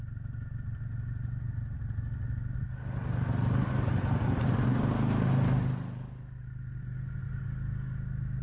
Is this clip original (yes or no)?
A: yes